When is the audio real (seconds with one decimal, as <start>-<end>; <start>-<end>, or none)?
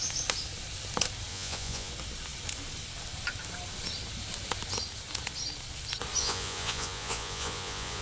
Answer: 0.0-1.3; 1.9-6.2